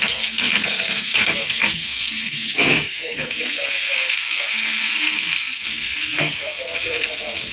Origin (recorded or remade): remade